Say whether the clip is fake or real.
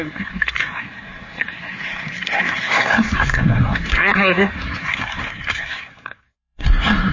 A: fake